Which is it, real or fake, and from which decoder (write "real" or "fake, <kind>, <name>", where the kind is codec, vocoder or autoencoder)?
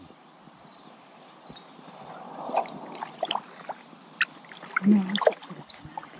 real